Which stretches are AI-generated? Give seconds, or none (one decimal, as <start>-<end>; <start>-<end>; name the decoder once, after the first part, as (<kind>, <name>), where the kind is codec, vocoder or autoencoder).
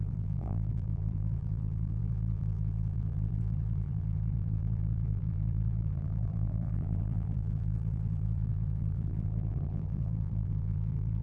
0.0-11.2 (vocoder, BigVGAN v2)